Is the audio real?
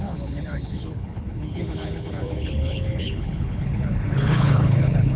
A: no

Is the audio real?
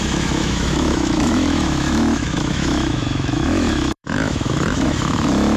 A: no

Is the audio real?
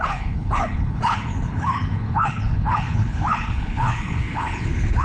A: no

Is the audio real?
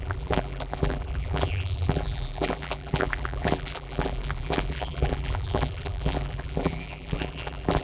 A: no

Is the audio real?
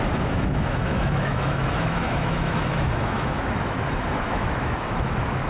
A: no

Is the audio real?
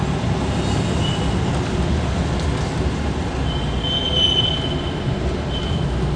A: yes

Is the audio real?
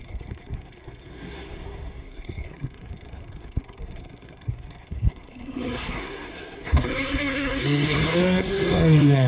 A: no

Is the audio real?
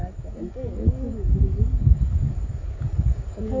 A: no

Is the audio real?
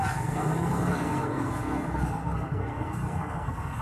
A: no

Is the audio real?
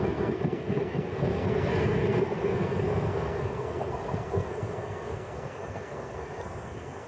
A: no